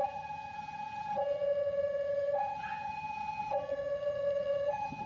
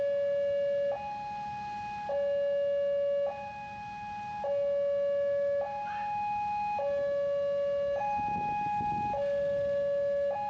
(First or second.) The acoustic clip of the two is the second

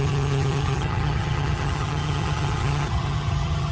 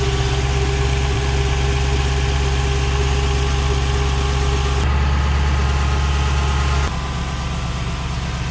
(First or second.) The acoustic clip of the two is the second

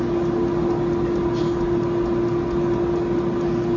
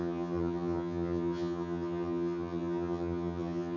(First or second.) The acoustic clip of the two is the first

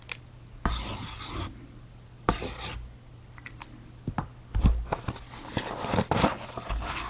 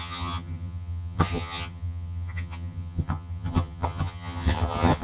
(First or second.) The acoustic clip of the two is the first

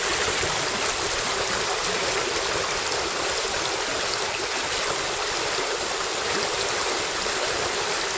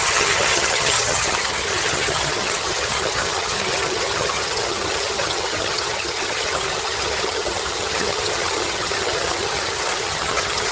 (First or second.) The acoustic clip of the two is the first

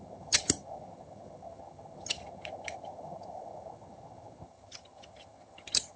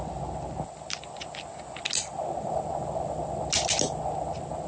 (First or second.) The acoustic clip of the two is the second